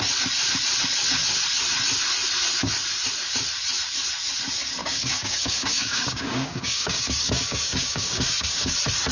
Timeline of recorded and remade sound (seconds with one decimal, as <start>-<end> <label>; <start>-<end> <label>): 0.0-4.8 recorded; 4.8-8.7 remade; 8.7-9.1 recorded